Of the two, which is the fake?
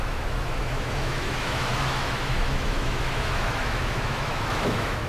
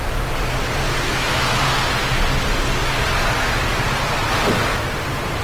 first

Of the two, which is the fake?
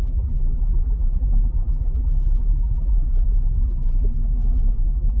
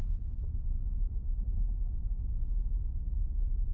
first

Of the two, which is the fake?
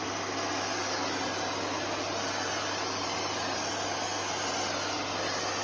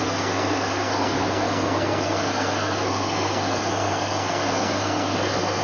second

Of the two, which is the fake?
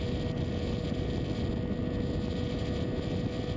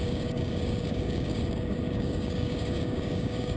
second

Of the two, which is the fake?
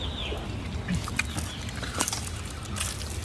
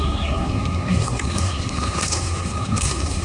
second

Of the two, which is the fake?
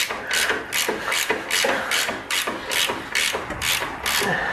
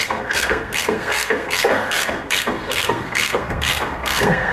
second